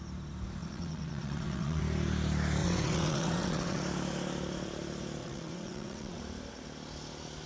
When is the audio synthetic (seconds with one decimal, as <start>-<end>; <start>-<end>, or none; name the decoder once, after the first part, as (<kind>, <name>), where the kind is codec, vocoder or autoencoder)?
0.6-1.8 (vocoder, WaveNeXt); 2.6-3.8; 5.2-6.2